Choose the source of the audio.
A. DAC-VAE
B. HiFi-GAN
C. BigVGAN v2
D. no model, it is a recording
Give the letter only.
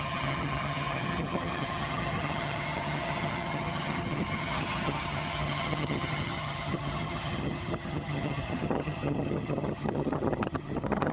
B